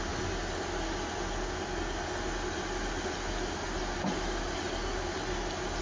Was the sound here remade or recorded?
recorded